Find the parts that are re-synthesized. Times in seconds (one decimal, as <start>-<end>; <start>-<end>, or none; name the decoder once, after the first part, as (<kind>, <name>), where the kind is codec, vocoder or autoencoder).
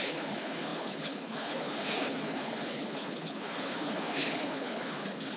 0.0-5.4 (codec, HILCodec)